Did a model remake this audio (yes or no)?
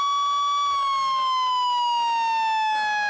no